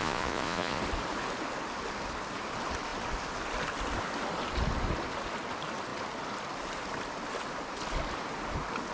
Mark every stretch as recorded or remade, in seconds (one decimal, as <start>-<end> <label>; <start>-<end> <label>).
0.0-0.8 remade; 0.8-8.9 recorded